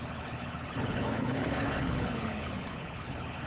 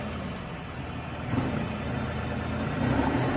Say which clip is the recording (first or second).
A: second